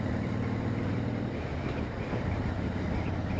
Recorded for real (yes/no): yes